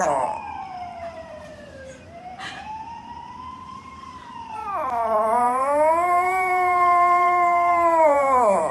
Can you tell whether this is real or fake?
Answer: fake